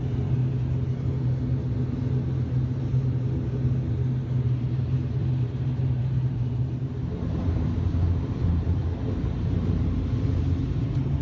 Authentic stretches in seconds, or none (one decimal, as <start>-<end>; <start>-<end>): 0.4-4.4